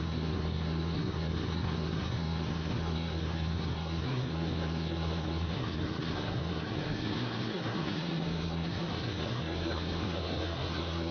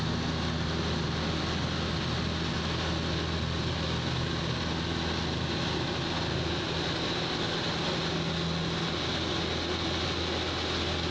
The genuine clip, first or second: second